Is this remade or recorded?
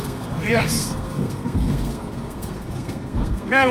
remade